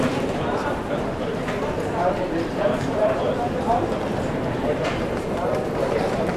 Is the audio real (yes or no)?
no